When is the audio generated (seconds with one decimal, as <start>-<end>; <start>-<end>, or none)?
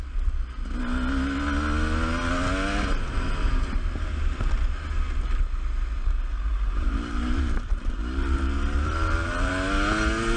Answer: 6.5-9.5